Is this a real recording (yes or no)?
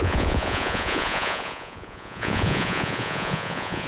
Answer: no